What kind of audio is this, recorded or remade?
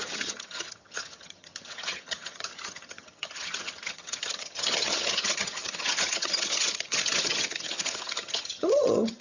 remade